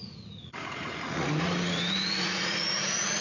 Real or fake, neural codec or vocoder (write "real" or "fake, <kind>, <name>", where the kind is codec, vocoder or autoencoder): fake, vocoder, Vocos